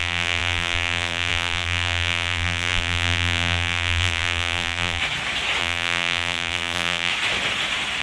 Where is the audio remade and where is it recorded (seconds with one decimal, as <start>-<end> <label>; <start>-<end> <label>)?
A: 0.0-5.0 remade; 5.0-5.6 recorded; 5.6-7.1 remade; 7.1-8.0 recorded